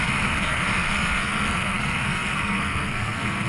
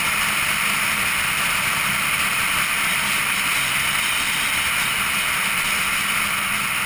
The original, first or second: second